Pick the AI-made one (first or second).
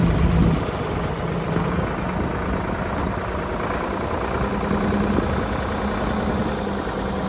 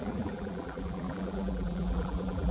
second